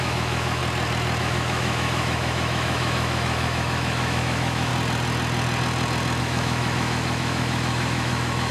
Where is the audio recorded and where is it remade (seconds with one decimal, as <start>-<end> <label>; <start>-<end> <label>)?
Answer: 0.0-0.6 remade; 0.6-1.2 recorded; 1.2-4.7 remade; 4.7-6.2 recorded; 6.2-8.5 remade